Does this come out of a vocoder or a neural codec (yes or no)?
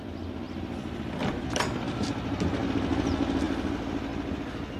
no